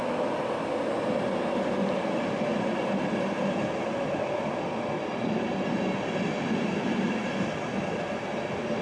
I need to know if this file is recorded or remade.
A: recorded